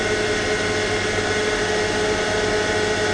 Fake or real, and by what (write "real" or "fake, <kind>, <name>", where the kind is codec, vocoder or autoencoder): real